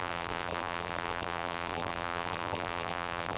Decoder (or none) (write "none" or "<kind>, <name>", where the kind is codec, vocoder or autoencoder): vocoder, BigVGAN v2